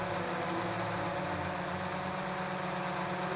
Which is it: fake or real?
real